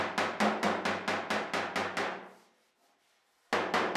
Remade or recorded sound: recorded